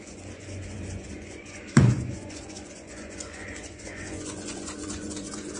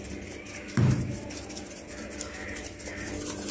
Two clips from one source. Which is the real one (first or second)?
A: second